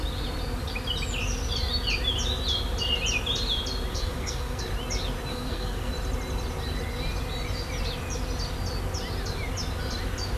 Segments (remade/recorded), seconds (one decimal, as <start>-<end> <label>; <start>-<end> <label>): 0.0-3.9 recorded; 3.9-4.6 remade; 4.6-5.3 recorded; 5.3-5.9 remade; 5.9-10.4 recorded

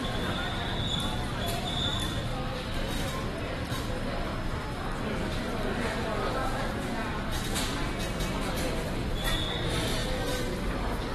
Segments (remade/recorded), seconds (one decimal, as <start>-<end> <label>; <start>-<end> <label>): 0.0-11.1 recorded

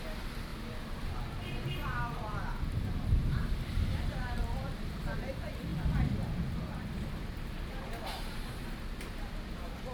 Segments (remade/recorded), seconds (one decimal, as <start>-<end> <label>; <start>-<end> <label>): 0.0-0.5 remade; 0.5-1.7 recorded; 1.7-9.9 remade

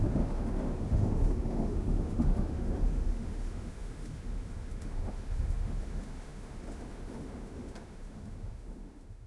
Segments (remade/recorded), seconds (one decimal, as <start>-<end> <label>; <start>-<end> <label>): 0.0-9.3 remade

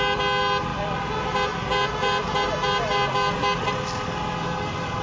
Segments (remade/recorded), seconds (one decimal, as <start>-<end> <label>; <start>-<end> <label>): 0.0-5.0 recorded

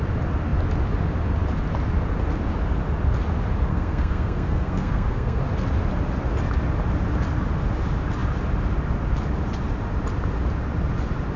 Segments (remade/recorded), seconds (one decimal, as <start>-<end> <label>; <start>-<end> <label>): 0.0-3.7 recorded; 3.7-5.4 remade; 5.4-11.4 recorded

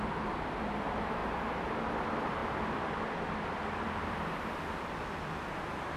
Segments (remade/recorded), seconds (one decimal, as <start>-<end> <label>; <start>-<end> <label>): 0.0-6.0 remade

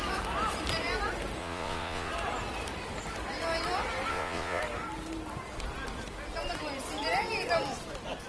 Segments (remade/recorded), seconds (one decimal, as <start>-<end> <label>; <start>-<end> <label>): 0.0-1.4 recorded; 1.4-2.1 remade; 2.1-4.1 recorded; 4.1-4.6 remade; 4.6-8.3 recorded